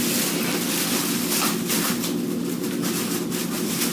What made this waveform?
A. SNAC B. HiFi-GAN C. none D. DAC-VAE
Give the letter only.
C